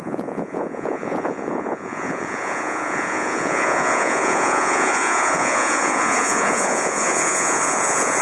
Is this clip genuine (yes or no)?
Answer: no